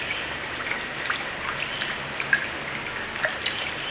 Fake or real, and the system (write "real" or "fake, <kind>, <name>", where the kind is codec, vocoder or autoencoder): real